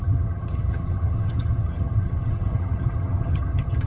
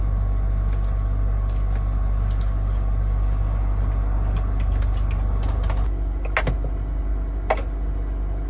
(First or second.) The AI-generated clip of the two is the first